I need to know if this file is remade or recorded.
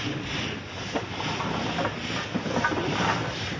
recorded